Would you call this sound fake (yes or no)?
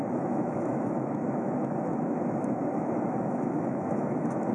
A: yes